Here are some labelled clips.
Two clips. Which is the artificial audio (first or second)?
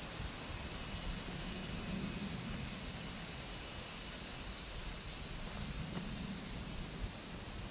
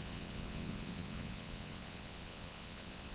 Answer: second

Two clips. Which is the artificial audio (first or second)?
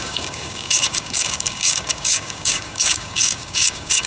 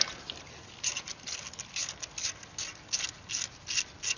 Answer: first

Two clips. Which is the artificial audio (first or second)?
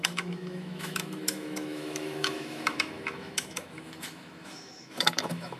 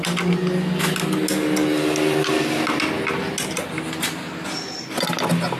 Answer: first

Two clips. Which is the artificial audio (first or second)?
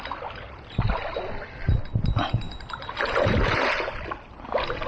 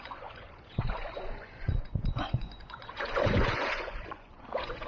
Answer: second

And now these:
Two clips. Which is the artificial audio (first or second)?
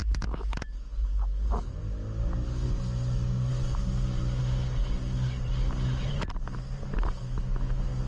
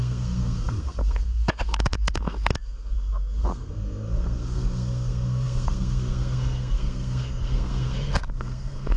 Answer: second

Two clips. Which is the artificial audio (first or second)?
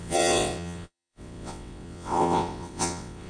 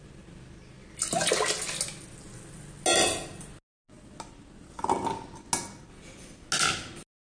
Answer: first